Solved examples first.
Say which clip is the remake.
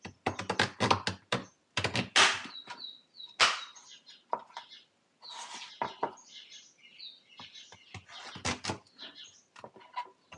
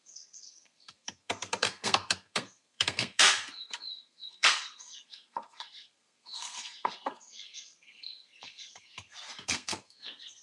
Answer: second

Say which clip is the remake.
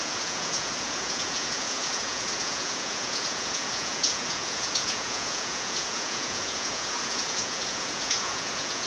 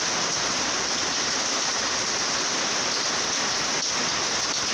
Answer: first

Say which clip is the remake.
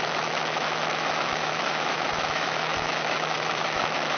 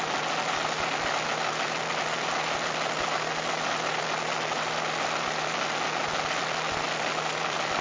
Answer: first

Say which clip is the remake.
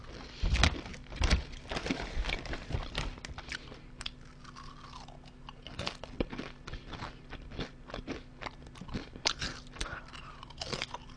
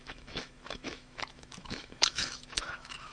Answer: second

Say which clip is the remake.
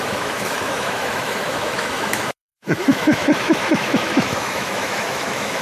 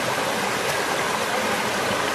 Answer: first